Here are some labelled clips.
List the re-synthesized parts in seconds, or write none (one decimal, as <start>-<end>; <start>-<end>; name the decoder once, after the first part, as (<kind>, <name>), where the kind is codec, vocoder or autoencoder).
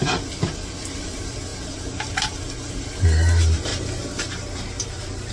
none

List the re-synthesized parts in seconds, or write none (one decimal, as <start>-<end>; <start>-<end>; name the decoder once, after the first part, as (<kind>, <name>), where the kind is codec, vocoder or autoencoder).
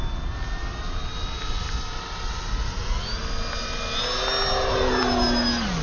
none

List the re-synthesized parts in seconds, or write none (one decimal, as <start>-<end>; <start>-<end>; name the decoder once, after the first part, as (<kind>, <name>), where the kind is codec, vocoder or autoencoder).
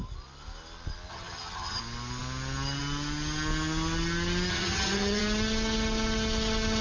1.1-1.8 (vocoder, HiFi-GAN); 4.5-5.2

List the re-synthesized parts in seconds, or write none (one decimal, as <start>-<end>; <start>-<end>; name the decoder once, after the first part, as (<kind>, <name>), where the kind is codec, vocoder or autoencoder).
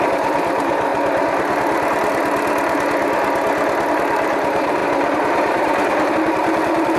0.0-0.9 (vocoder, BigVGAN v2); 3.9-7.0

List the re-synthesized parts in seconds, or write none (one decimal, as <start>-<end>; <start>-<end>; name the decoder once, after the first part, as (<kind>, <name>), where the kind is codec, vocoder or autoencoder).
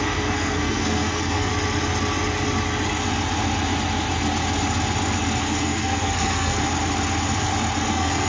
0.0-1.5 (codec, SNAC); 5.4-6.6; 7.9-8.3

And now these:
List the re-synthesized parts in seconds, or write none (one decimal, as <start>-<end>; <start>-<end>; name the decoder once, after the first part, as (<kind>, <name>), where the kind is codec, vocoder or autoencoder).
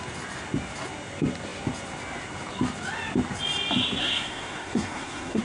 4.0-5.4 (codec, SNAC)